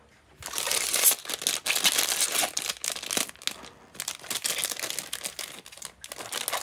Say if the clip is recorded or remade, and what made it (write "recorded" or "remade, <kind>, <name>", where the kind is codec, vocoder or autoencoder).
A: recorded